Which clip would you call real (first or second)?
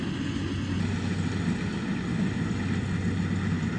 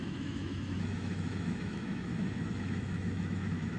first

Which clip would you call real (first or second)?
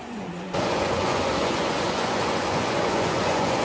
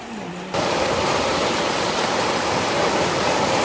second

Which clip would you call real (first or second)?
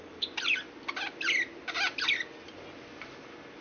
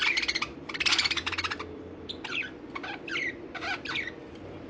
first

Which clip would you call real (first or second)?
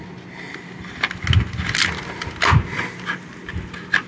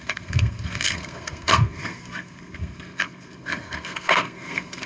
first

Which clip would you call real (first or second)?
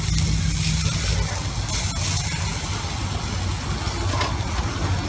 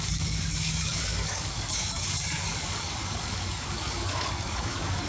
first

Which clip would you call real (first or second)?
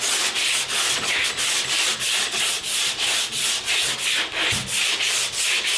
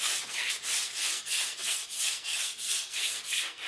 first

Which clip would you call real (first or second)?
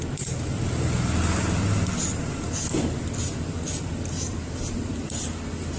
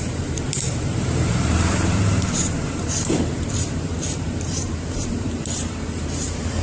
first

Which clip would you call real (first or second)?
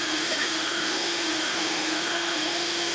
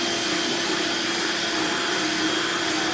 second